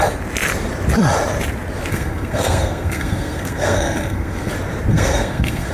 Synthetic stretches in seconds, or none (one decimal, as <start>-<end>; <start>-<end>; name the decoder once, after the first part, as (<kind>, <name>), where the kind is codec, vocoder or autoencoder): 1.9-4.5 (codec, SNAC); 4.9-5.7